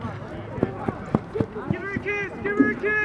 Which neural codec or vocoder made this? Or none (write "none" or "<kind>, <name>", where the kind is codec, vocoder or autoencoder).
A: none